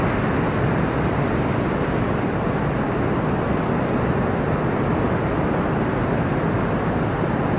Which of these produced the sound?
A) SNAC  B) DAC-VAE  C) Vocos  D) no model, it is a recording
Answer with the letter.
D